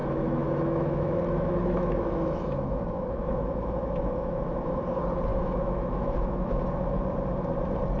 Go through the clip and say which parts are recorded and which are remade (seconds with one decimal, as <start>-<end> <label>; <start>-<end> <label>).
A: 0.0-4.8 remade; 4.8-5.3 recorded; 5.3-7.0 remade; 7.0-8.0 recorded